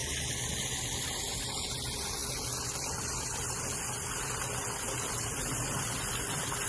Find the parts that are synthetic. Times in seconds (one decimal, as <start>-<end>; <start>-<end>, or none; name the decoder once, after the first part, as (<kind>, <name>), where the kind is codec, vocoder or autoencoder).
none